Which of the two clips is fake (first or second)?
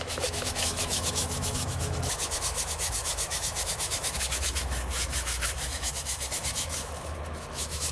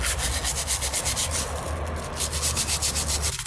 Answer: first